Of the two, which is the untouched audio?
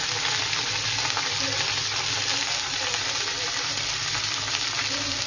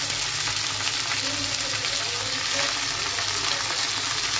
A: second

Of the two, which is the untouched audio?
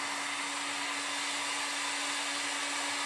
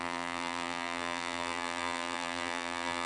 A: first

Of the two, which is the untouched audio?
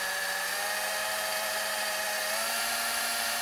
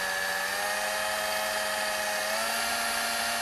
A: second